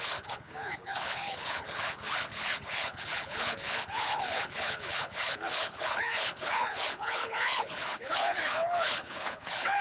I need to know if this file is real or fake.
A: fake